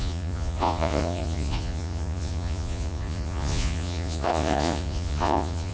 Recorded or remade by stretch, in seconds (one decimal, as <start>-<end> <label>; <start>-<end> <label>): 0.0-5.7 remade